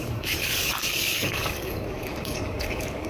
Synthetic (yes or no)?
yes